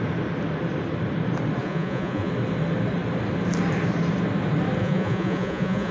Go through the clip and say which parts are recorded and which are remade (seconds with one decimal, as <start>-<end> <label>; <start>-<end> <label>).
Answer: 0.0-1.6 recorded; 1.6-2.3 remade; 2.3-4.8 recorded; 4.8-5.9 remade